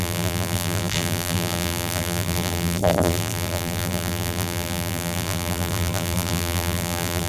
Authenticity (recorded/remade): remade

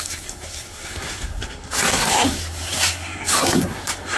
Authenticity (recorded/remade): remade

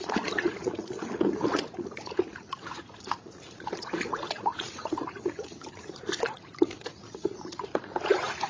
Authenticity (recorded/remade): remade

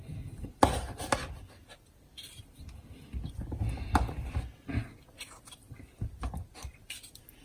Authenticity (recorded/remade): recorded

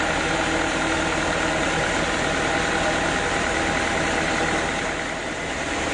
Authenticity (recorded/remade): recorded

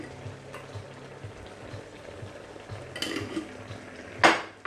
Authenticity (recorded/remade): recorded